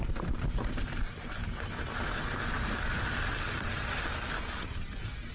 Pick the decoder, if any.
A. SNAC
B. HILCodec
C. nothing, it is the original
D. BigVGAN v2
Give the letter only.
C